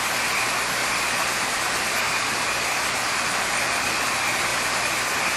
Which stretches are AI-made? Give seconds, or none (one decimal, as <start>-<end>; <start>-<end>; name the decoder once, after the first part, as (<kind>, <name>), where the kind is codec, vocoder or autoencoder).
none